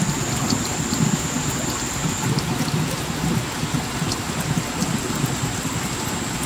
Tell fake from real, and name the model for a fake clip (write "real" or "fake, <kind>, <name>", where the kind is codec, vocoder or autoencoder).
real